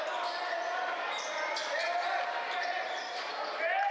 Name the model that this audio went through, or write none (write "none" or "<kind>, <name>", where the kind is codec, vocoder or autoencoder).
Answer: none